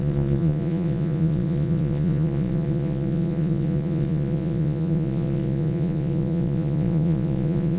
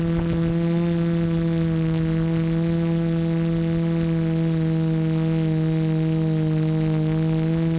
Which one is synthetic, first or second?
first